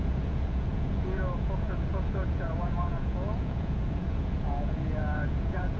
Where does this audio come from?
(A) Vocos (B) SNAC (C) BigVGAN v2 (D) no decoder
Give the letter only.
A